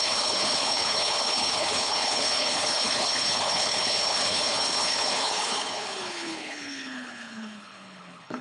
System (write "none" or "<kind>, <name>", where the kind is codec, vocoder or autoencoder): codec, HILCodec